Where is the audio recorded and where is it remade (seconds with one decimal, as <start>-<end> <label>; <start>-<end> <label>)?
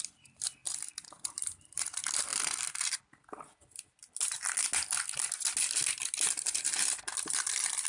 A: 0.0-2.3 remade; 2.3-2.8 recorded; 2.8-4.0 remade; 4.0-6.5 recorded; 6.5-7.9 remade